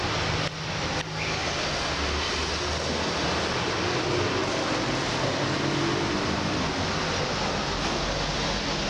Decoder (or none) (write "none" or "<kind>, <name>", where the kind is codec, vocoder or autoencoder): none